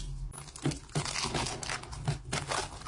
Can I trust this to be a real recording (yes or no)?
yes